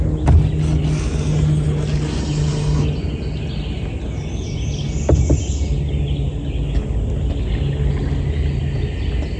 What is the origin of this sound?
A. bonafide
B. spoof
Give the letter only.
A